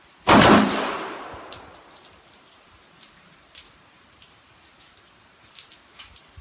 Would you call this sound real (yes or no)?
no